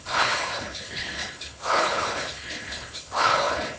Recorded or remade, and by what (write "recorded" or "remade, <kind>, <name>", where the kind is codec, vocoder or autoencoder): remade, codec, HILCodec